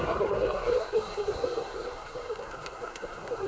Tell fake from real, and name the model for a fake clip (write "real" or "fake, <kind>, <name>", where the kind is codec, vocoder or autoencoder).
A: fake, codec, SNAC